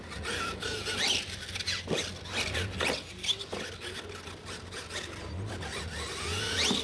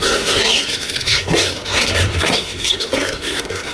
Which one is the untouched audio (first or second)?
first